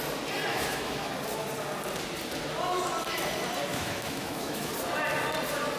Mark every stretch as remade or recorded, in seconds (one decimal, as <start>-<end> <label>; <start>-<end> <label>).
0.0-0.5 recorded; 0.5-1.1 remade; 1.1-3.7 recorded; 3.7-4.7 remade; 4.7-5.8 recorded